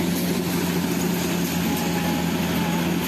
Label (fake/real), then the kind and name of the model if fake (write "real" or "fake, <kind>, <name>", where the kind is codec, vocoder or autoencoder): real